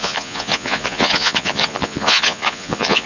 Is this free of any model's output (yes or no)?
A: no